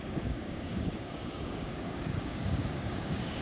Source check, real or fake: fake